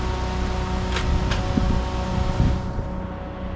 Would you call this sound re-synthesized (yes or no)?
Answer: no